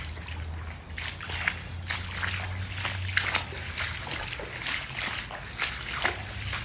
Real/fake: real